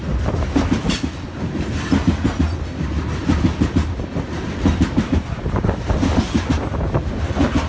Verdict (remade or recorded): recorded